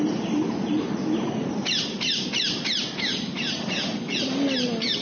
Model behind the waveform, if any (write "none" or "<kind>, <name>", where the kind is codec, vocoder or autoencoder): none